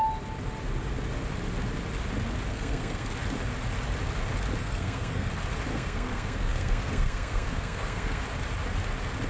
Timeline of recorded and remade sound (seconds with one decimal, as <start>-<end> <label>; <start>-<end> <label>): 0.0-2.5 recorded; 2.5-3.1 remade; 3.1-4.6 recorded; 4.6-5.3 remade; 5.3-5.7 recorded; 5.7-8.2 remade; 8.2-9.3 recorded